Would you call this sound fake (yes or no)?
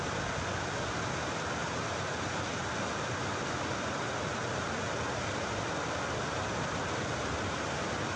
no